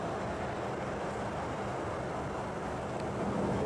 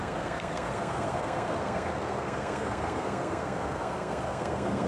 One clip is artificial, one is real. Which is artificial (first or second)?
second